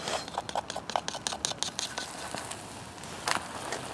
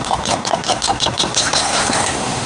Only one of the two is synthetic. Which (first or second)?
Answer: second